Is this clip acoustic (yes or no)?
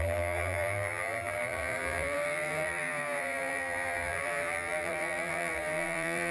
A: no